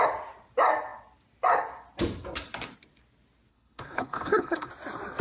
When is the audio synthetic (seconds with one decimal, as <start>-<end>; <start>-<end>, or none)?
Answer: 3.5-4.7